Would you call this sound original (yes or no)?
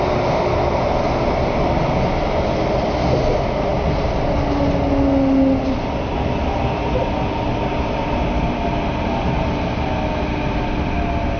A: yes